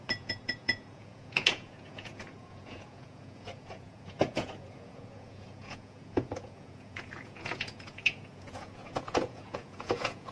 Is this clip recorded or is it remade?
remade